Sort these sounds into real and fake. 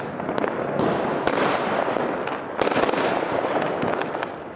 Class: real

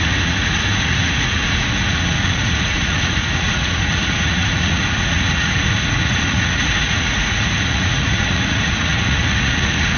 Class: fake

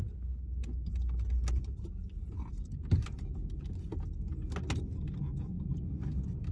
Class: real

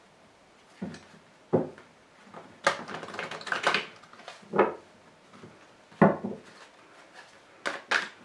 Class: real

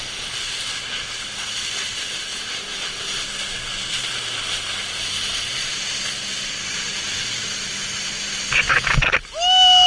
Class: real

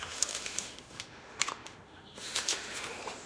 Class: fake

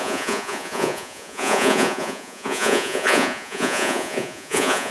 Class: fake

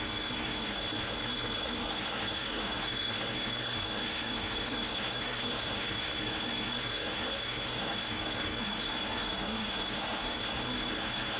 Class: fake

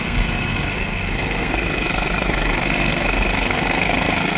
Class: fake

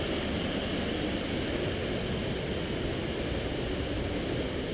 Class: real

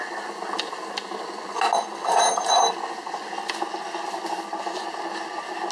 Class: real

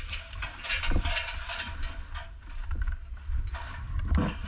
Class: real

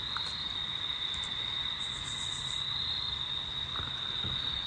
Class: real